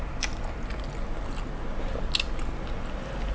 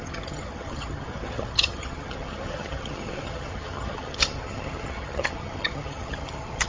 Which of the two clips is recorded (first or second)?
first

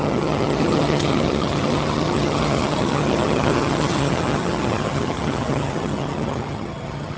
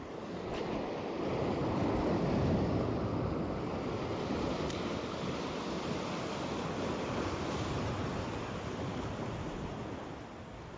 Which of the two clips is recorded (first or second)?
second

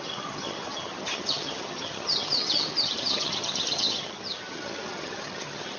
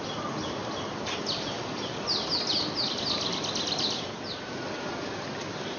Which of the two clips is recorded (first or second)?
second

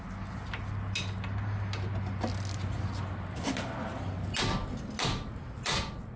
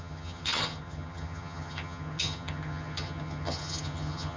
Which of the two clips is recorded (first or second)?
first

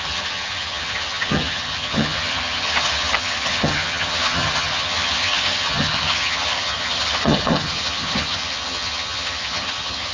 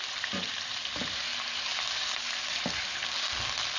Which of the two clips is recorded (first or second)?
second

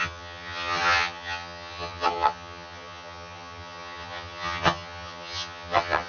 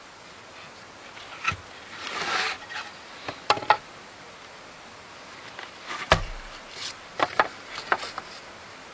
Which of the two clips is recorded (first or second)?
second